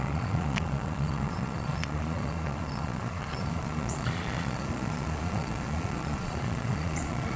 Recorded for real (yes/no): no